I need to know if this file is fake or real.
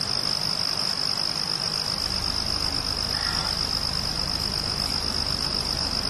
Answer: real